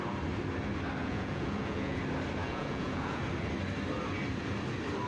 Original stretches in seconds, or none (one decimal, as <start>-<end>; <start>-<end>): 0.0-1.0; 2.0-2.4; 3.2-5.1